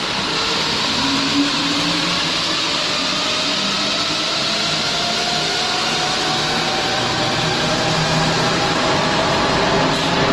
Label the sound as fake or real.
real